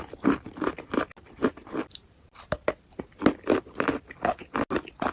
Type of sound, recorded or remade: recorded